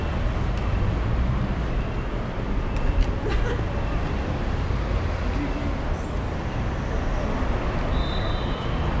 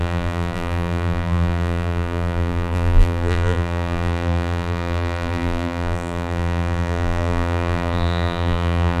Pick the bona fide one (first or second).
first